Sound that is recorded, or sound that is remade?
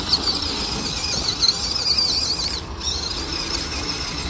recorded